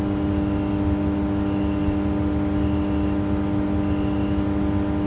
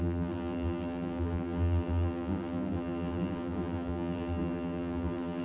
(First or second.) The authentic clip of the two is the first